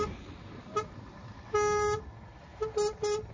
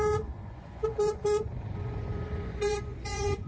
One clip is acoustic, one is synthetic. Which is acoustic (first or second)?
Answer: first